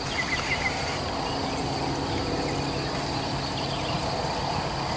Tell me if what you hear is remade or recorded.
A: recorded